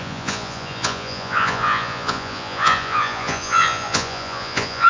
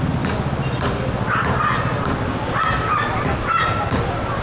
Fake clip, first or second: first